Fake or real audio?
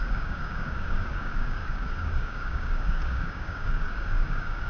fake